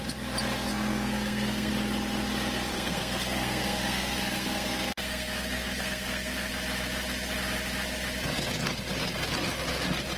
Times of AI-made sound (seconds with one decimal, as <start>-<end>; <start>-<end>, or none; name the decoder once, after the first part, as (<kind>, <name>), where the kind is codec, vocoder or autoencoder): 0.7-1.7 (codec, SNAC); 2.7-6.5